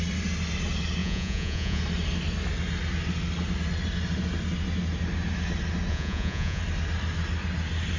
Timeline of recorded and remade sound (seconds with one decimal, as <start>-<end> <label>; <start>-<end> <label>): 0.0-1.0 recorded; 1.0-1.8 remade; 1.8-5.9 recorded; 5.9-6.6 remade; 6.6-8.0 recorded